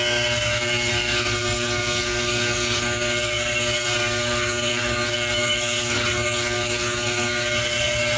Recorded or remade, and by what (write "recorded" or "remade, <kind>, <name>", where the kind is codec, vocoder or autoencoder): remade, codec, SNAC